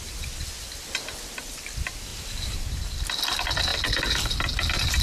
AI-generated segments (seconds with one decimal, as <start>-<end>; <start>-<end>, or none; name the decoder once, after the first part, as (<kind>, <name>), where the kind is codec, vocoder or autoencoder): 2.1-3.0 (vocoder, BigVGAN v2)